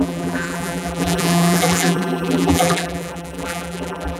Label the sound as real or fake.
fake